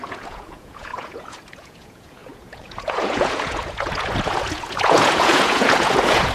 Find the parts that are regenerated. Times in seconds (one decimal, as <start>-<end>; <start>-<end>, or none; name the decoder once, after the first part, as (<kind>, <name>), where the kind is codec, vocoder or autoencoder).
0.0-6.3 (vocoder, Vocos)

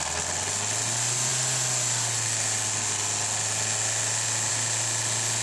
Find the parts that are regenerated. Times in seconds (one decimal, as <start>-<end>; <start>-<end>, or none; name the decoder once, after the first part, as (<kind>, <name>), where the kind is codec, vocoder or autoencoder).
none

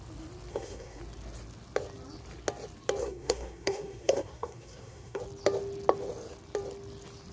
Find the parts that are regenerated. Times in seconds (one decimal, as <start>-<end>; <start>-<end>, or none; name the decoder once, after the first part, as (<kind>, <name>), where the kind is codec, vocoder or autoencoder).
0.5-1.0 (codec, SNAC); 3.0-5.2

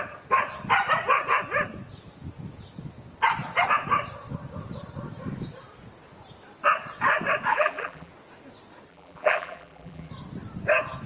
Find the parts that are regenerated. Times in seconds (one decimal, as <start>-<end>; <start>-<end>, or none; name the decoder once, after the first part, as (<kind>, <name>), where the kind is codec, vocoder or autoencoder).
7.5-8.1 (vocoder, BigVGAN v2); 8.9-10.1